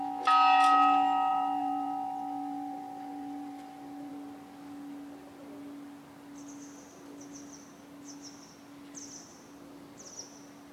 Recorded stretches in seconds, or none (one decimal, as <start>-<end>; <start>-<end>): 0.0-1.3; 4.1-10.7